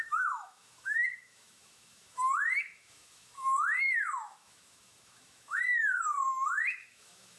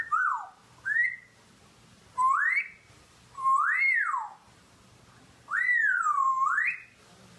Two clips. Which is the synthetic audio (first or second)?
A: first